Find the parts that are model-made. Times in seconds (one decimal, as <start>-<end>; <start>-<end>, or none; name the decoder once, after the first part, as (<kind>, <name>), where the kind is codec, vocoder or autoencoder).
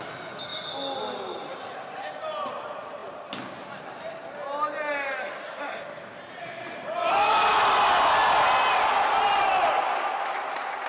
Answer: none